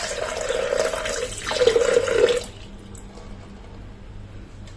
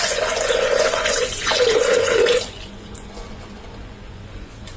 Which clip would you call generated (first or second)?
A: second